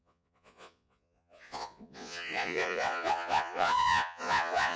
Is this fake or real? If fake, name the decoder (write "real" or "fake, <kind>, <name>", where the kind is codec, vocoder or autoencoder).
fake, vocoder, Vocos